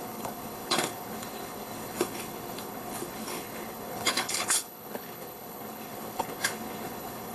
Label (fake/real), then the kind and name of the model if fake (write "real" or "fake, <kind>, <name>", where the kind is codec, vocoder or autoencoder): fake, codec, HILCodec